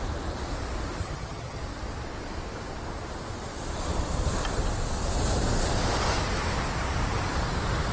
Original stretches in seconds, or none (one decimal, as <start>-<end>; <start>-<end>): 0.0-1.0; 1.6-7.9